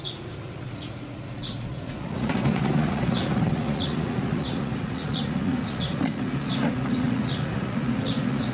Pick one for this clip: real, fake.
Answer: fake